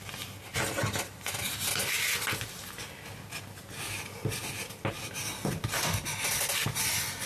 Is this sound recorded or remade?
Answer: recorded